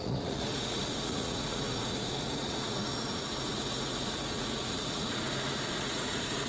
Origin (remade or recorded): remade